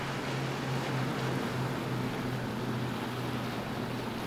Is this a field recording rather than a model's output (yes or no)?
yes